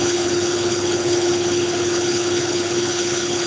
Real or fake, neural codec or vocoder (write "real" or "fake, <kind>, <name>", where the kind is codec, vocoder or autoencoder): fake, codec, HILCodec